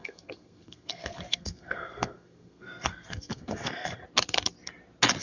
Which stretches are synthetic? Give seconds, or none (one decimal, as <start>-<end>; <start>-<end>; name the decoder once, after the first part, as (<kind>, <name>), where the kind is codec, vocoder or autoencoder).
0.0-4.0 (codec, SNAC)